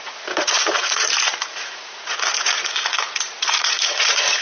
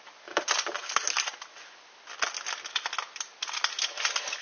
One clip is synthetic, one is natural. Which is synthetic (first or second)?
first